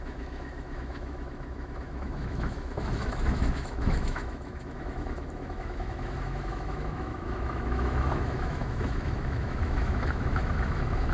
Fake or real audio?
fake